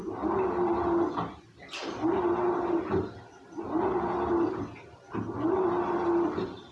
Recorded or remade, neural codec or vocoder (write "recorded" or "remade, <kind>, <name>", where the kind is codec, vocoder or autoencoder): recorded